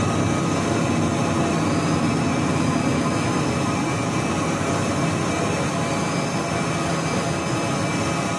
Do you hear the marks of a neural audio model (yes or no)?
no